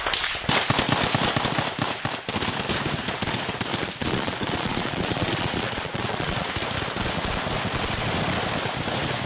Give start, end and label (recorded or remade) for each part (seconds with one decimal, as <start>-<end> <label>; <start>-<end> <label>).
0.0-3.7 recorded; 3.7-6.5 remade; 6.5-9.3 recorded